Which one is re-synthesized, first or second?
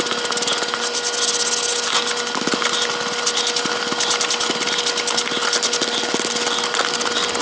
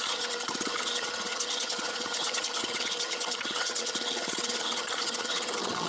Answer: second